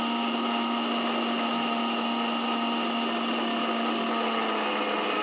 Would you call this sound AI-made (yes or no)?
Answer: no